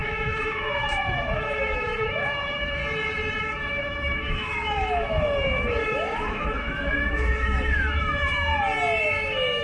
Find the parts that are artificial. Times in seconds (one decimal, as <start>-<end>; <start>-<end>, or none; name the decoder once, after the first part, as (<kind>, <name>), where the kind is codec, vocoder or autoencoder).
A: 0.0-2.8 (autoencoder, DAC-VAE); 3.4-8.5; 9.0-9.6